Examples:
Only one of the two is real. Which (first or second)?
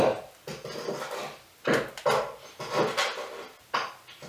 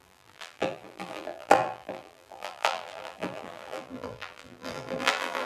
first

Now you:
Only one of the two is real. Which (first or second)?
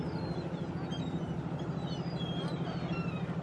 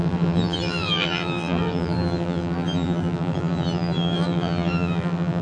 first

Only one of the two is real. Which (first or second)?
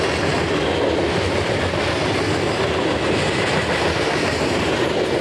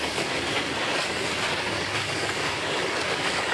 first